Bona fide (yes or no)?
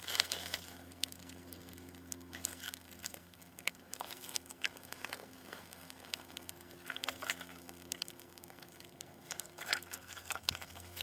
no